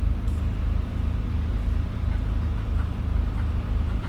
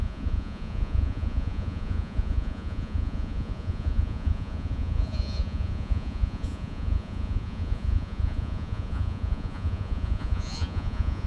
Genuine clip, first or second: first